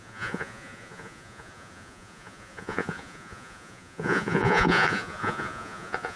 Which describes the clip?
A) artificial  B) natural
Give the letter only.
A